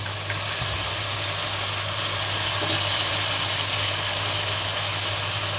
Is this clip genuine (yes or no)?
yes